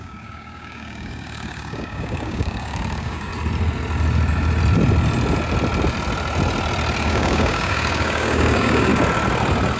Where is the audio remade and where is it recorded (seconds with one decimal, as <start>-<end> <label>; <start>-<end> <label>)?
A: 0.0-3.3 remade; 3.3-7.0 recorded; 7.0-8.9 remade; 8.9-9.8 recorded